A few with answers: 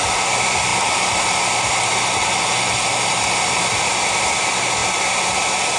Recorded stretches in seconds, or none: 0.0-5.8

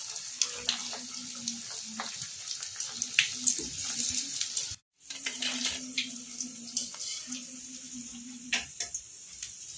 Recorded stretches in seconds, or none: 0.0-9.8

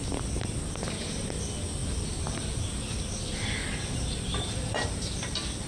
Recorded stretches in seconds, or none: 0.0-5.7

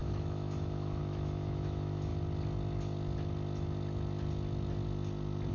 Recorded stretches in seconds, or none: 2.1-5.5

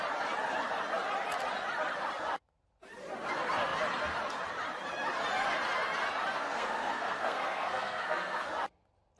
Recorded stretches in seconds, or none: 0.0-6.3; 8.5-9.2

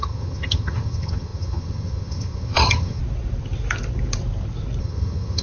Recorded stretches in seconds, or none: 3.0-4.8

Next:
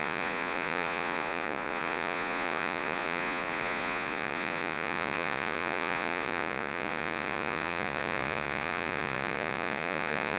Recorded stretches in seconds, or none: none

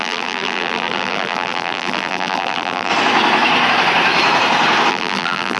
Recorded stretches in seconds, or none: 2.9-4.9